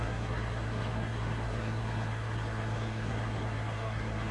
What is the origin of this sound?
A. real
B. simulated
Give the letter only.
B